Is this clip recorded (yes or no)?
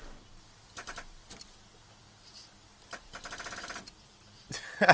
no